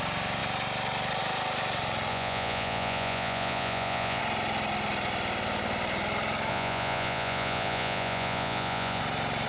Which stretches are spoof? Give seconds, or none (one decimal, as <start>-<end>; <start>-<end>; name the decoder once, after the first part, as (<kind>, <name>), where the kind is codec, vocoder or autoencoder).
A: 2.1-4.2 (vocoder, Vocos); 6.5-9.0